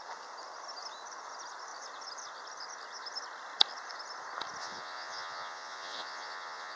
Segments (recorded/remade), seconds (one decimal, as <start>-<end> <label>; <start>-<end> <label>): 0.0-4.6 recorded; 4.6-6.8 remade